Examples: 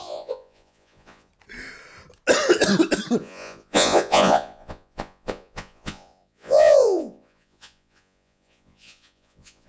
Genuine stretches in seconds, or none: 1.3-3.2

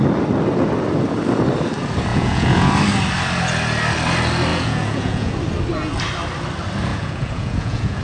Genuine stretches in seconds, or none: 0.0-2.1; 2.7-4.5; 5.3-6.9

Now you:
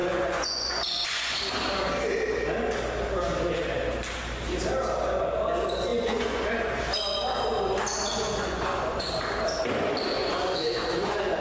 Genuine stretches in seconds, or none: 1.4-5.9; 6.8-8.1; 9.1-10.2

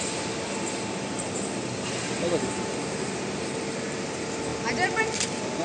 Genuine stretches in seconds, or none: 0.0-5.6

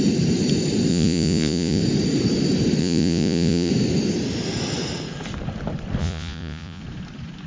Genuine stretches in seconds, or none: 0.0-0.9; 1.8-2.8; 3.7-6.0; 6.8-7.5

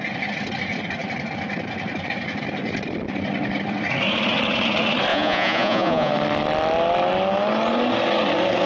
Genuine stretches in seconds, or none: 0.0-5.1; 6.1-8.7

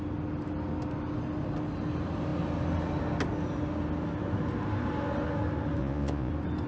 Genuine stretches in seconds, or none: 0.0-5.8; 6.3-6.7